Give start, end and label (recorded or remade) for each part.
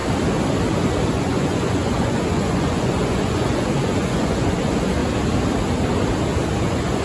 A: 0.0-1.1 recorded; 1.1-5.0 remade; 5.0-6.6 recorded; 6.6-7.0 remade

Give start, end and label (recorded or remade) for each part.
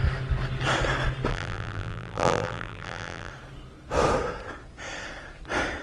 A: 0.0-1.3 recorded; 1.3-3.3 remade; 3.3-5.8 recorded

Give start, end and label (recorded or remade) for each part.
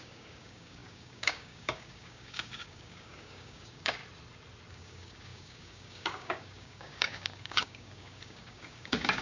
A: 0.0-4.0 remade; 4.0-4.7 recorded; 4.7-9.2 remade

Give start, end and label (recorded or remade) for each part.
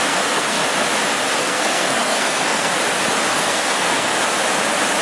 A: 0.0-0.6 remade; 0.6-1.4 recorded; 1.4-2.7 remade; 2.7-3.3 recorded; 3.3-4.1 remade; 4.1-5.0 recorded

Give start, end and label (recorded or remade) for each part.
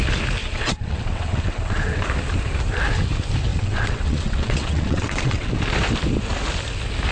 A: 0.0-0.4 recorded; 0.4-2.0 remade; 2.0-3.5 recorded; 3.5-5.5 remade; 5.5-7.1 recorded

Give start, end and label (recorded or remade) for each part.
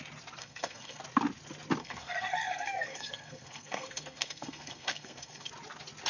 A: 0.0-0.4 recorded; 0.4-1.0 remade; 1.0-1.8 recorded; 1.8-5.5 remade; 5.5-6.1 recorded